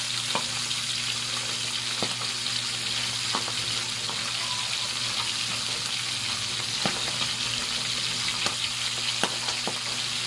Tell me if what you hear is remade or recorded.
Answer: recorded